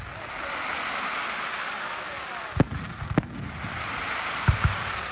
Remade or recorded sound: recorded